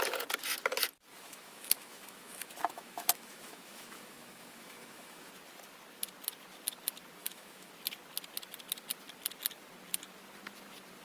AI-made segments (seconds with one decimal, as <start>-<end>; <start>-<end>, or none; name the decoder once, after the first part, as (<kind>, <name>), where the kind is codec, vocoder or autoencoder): 1.1-5.3 (autoencoder, DAC-VAE); 7.2-7.7